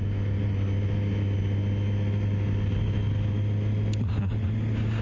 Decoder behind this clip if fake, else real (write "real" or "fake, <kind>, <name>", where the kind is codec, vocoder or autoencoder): real